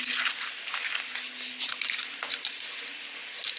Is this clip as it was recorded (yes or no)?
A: yes